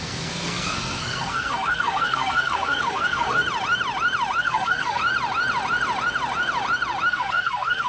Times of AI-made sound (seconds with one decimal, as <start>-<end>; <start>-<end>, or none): 0.0-3.4; 4.4-5.0; 7.1-7.9